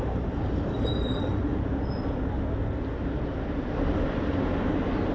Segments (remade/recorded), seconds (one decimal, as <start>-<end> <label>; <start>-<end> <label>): 0.0-1.5 remade; 1.5-4.6 recorded; 4.6-5.1 remade